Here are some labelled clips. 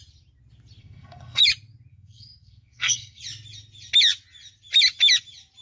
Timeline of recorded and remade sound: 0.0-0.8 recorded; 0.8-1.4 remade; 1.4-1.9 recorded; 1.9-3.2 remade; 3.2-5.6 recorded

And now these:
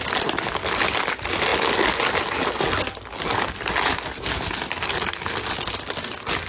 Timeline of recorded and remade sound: 0.0-6.5 recorded

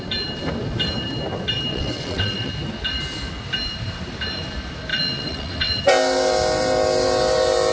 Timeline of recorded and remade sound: 0.0-1.7 recorded; 1.7-2.5 remade; 2.5-4.9 recorded; 4.9-5.8 remade; 5.8-7.7 recorded

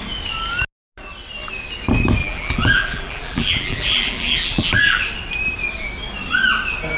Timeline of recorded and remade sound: 0.0-2.2 recorded; 2.2-5.0 remade; 5.0-7.0 recorded

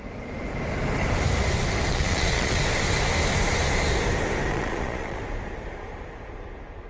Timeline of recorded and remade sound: 0.0-1.9 recorded; 1.9-2.6 remade; 2.6-4.5 recorded; 4.5-5.2 remade; 5.2-6.9 recorded

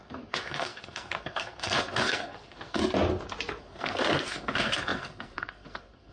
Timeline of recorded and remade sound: 0.0-2.8 remade; 2.8-3.6 recorded; 3.6-6.1 remade

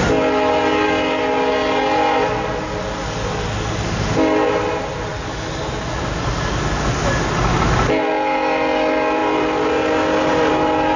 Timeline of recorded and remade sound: 0.0-11.0 recorded